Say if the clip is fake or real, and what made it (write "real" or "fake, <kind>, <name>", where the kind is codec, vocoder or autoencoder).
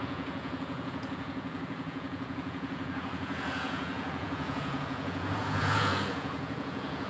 fake, vocoder, Vocos